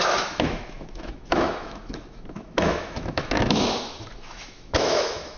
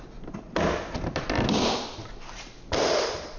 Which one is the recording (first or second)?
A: second